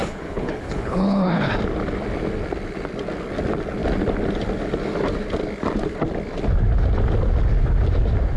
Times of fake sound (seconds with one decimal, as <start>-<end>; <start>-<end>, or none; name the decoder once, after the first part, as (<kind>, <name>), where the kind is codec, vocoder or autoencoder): 0.0-1.5 (codec, HILCodec)